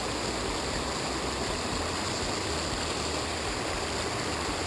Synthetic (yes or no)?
no